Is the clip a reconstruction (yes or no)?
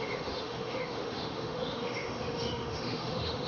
yes